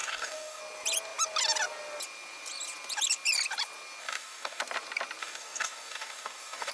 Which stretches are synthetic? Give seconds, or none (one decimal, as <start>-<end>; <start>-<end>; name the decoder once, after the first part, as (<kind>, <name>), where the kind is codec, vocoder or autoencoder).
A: 0.0-0.6 (codec, DAC); 4.0-4.6; 5.2-6.7

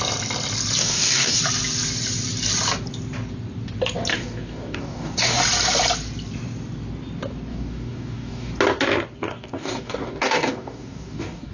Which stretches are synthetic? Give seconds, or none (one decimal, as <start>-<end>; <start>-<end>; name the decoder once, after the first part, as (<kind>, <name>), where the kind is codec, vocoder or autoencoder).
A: 0.8-1.4 (codec, DAC); 4.1-5.4; 7.5-8.5; 9.2-11.5

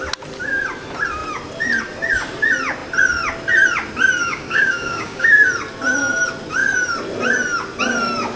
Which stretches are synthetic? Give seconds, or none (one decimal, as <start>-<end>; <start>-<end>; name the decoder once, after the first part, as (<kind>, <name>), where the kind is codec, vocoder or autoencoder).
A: 4.2-5.3 (codec, DAC)

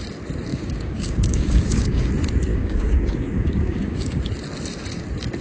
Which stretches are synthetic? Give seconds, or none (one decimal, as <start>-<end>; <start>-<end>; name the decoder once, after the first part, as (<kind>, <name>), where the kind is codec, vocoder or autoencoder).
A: 0.5-2.1 (codec, DAC); 2.5-4.2

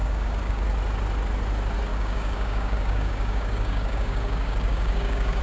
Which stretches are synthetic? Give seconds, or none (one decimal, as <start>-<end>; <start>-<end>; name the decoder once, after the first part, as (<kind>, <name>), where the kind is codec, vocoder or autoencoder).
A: 0.0-0.7 (codec, DAC); 1.9-5.4

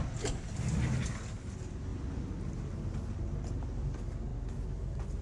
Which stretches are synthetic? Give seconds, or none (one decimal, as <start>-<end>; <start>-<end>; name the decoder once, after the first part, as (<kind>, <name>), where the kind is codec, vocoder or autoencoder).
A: none